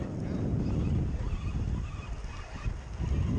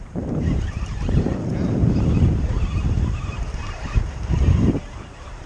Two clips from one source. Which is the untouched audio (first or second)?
first